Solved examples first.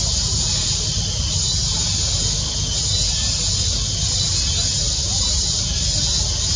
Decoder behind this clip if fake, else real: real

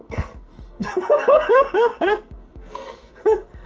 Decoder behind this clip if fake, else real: fake, codec, SNAC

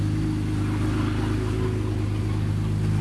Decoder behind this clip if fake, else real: real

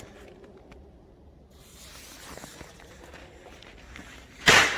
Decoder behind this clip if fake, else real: real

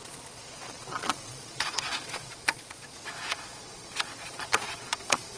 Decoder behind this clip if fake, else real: fake, vocoder, Vocos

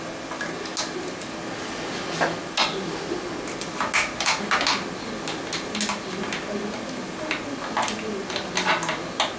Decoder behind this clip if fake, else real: real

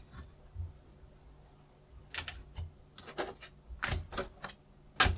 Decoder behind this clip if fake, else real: real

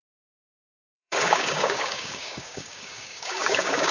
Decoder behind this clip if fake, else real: fake, codec, DAC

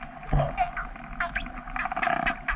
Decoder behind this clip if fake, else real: real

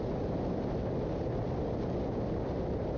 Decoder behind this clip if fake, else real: real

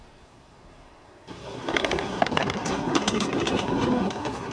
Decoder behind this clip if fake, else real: fake, codec, SNAC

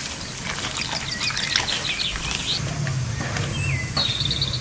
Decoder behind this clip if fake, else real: real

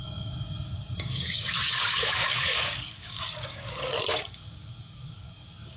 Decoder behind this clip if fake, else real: fake, codec, DAC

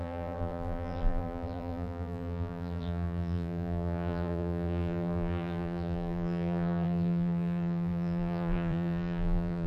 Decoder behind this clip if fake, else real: fake, vocoder, BigVGAN v2